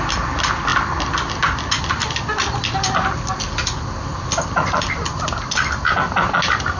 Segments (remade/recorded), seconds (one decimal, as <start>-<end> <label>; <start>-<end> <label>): 0.0-6.8 recorded